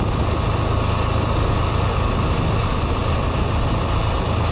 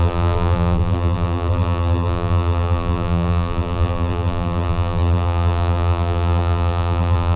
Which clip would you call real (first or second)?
first